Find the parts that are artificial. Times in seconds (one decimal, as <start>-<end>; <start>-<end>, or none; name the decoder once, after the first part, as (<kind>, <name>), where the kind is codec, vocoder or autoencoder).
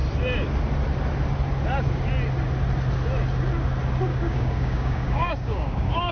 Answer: 4.1-6.1 (codec, DAC)